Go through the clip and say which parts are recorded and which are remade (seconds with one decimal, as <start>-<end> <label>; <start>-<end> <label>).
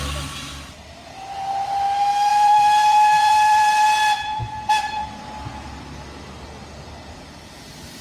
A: 0.0-2.3 recorded; 2.3-5.8 remade; 5.8-8.0 recorded